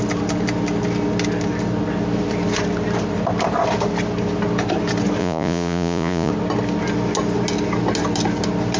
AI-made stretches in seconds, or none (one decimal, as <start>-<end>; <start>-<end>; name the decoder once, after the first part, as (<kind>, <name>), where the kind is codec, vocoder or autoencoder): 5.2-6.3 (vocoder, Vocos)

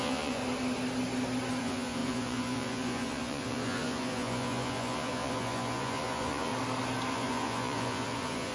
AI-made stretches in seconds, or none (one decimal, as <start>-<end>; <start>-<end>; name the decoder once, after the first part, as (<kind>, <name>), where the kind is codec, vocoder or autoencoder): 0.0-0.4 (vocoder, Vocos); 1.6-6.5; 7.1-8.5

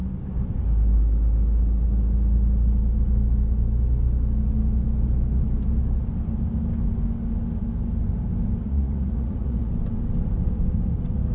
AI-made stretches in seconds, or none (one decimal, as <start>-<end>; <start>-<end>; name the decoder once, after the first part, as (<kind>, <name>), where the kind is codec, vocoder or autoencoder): 8.6-9.7 (vocoder, Vocos)

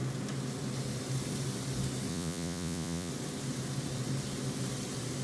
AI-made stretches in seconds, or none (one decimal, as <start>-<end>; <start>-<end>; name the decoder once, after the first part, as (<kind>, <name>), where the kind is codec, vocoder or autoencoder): 2.1-3.1 (vocoder, Vocos)

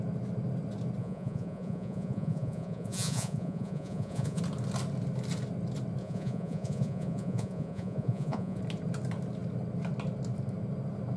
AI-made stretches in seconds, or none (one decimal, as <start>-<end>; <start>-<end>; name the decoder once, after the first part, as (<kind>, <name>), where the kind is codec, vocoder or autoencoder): 1.0-4.4 (vocoder, Vocos); 6.0-8.6